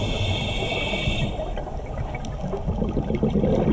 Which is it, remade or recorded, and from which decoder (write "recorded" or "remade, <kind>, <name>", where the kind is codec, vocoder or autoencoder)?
recorded